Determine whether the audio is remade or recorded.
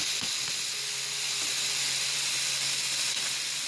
recorded